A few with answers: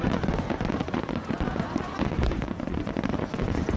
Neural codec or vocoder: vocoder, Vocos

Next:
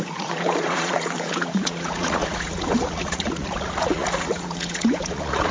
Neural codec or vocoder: vocoder, Vocos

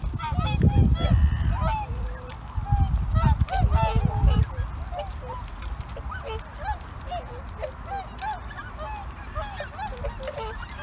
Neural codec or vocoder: none